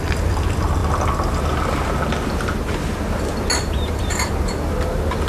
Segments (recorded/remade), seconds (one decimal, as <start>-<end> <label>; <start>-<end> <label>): 0.0-5.3 recorded